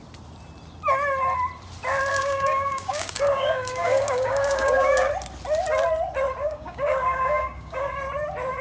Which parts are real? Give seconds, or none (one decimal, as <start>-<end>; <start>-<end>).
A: 0.0-2.1; 5.1-6.4; 7.9-8.6